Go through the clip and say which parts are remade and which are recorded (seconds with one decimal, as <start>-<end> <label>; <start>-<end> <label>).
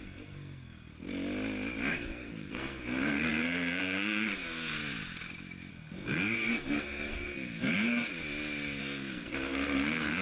0.0-1.1 remade; 1.1-1.9 recorded; 1.9-4.8 remade; 4.8-5.7 recorded; 5.7-8.1 remade; 8.1-8.8 recorded; 8.8-10.2 remade